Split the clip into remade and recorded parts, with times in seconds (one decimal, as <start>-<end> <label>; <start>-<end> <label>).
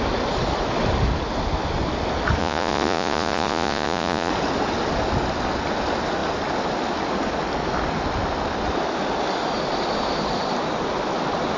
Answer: 0.0-2.4 recorded; 2.4-4.3 remade; 4.3-11.6 recorded